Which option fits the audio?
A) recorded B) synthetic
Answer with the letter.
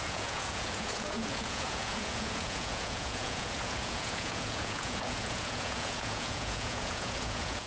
B